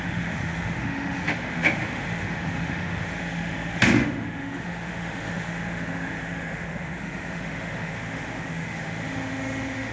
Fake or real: fake